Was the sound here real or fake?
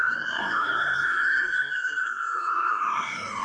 fake